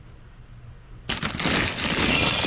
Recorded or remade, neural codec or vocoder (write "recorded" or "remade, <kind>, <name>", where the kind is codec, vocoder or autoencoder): recorded